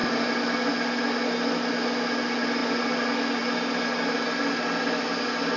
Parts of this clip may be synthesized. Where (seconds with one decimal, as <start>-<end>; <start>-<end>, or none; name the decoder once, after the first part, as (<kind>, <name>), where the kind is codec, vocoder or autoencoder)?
none